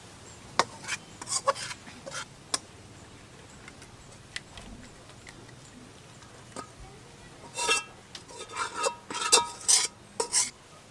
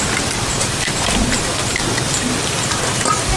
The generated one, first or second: second